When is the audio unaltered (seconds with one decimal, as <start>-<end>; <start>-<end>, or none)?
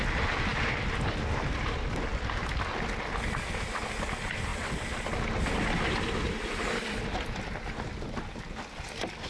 0.0-9.3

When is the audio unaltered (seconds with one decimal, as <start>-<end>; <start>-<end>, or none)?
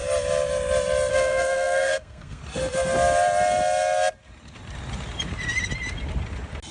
0.0-1.1; 2.4-6.7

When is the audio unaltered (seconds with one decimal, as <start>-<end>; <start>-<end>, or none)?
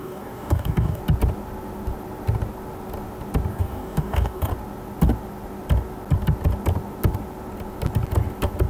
1.0-3.5; 4.5-8.7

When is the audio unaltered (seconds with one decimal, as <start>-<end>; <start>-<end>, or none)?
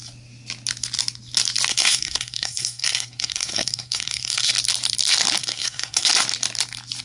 0.0-1.7; 4.5-5.4; 6.1-7.0